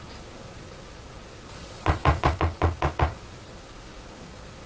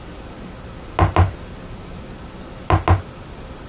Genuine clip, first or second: second